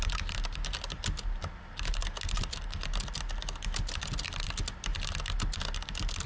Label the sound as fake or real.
real